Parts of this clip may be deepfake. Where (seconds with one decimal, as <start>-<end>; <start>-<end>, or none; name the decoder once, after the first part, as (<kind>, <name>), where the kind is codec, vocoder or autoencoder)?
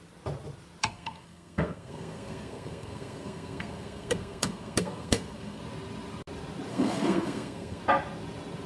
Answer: 0.8-5.6 (codec, SNAC); 6.7-7.8